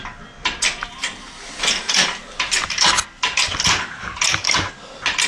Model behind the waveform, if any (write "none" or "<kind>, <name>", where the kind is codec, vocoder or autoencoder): none